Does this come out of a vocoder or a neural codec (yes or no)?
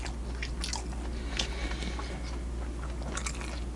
no